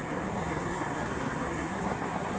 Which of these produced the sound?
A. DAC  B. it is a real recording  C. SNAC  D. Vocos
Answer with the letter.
C